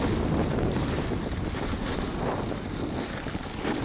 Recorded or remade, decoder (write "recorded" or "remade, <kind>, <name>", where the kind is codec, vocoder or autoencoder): recorded